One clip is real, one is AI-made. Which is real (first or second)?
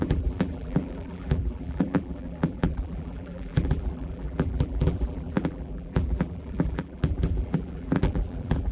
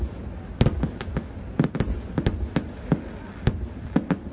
second